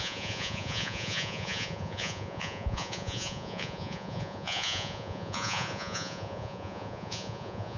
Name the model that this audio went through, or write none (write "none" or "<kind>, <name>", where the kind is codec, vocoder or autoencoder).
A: vocoder, Vocos